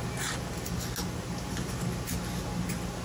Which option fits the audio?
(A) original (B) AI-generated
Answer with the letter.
A